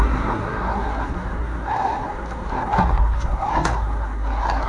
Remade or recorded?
remade